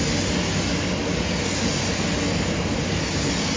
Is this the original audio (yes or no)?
yes